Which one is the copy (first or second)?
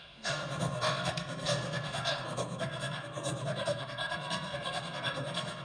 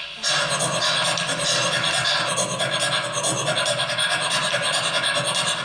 first